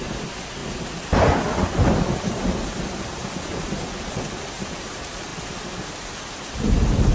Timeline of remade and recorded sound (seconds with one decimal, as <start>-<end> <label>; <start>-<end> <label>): 0.0-7.1 recorded